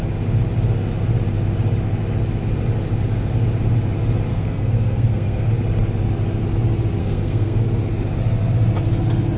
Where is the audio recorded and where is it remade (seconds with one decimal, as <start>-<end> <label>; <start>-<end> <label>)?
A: 0.0-4.3 recorded; 4.3-5.5 remade; 5.5-7.0 recorded; 7.0-7.6 remade; 7.6-9.4 recorded